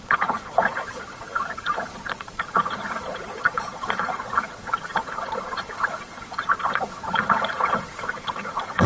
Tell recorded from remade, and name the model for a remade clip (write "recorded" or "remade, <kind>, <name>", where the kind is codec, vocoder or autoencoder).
remade, vocoder, Vocos